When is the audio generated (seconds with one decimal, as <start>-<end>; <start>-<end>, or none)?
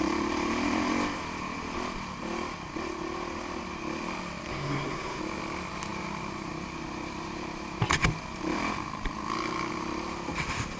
4.5-5.2